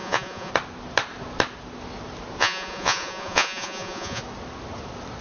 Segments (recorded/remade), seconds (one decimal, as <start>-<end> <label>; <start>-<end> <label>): 0.0-0.5 remade; 0.5-2.4 recorded; 2.4-4.2 remade; 4.2-5.2 recorded